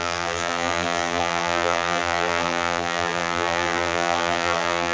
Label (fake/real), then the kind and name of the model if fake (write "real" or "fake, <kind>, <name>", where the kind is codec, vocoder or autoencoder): fake, vocoder, BigVGAN v2